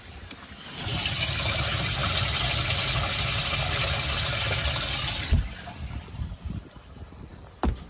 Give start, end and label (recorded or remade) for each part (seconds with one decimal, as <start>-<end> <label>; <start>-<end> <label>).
0.0-7.9 recorded